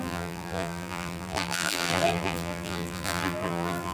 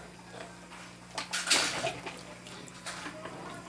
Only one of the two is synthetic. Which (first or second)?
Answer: first